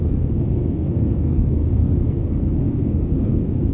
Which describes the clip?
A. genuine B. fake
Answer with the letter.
B